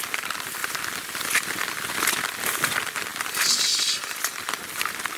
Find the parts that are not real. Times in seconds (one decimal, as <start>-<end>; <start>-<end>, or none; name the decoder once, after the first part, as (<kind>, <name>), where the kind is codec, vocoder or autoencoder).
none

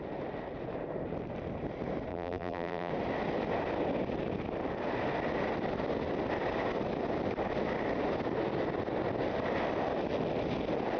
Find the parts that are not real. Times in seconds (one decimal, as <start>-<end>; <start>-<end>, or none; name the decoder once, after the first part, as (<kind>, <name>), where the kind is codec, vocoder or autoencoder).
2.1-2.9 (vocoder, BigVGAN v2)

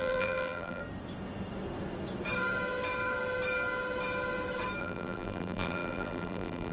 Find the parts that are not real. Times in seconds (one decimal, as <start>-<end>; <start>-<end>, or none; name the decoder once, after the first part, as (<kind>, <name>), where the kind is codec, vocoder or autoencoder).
0.0-0.8 (vocoder, BigVGAN v2); 4.8-6.7

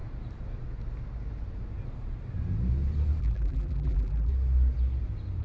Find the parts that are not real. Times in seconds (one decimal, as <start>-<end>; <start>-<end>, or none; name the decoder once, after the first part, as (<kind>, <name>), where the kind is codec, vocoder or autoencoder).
3.2-4.3 (vocoder, BigVGAN v2)

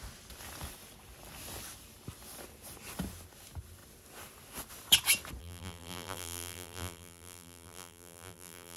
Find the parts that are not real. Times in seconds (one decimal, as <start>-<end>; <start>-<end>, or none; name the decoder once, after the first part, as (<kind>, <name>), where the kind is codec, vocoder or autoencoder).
5.4-8.8 (vocoder, BigVGAN v2)

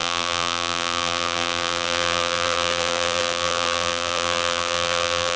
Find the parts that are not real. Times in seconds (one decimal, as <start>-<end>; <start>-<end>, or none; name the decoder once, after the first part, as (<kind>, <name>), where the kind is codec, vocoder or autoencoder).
0.0-5.4 (vocoder, BigVGAN v2)